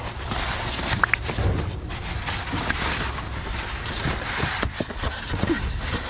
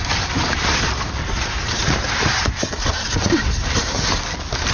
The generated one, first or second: second